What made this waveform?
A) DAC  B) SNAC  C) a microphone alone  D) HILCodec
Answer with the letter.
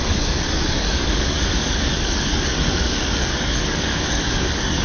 A